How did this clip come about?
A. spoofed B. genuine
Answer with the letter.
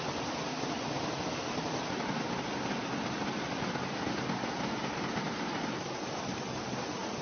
B